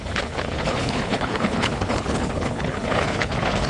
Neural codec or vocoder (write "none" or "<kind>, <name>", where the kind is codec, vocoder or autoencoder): codec, HILCodec